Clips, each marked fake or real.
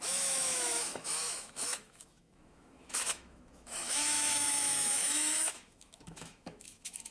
fake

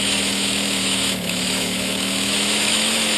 fake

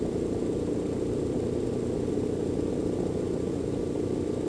real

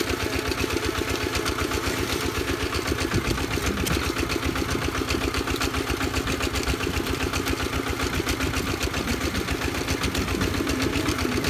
real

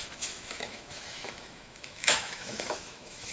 fake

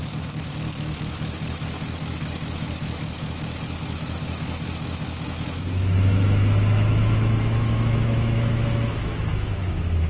fake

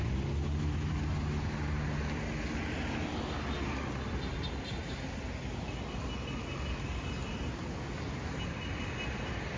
real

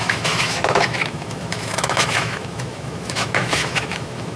fake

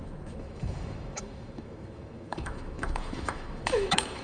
fake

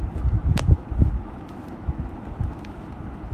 fake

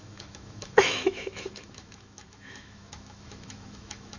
fake